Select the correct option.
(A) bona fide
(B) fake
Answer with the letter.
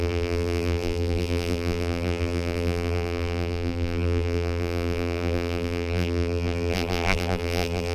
B